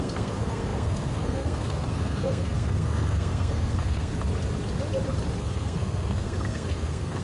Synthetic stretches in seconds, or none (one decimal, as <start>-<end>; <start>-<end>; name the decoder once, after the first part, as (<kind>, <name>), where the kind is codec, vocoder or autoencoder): 0.0-4.1 (codec, SNAC); 5.4-7.2